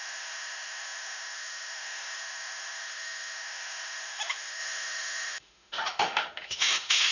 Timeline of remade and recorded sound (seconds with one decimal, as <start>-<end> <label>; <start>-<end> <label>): 0.0-7.1 remade